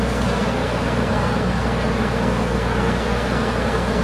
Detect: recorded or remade remade